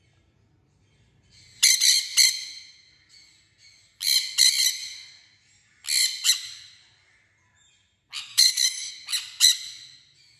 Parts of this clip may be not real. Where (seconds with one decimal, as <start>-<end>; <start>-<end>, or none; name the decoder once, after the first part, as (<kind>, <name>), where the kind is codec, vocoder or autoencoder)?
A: 8.3-8.9 (codec, DAC)